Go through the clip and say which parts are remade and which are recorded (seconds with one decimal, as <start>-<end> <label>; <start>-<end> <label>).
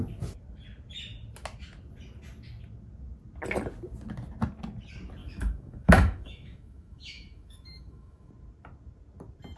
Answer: 0.0-5.2 recorded; 5.2-8.3 remade; 8.3-9.6 recorded